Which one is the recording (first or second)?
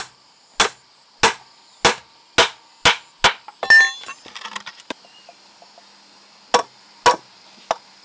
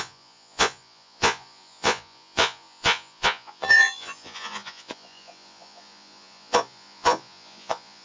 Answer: first